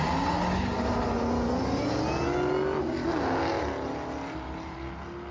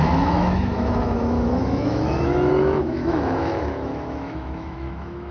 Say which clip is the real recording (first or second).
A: first